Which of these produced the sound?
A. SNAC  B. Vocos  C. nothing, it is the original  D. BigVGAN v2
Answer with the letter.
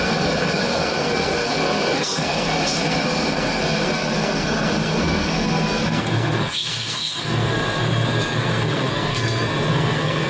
A